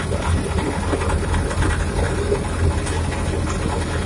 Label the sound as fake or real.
real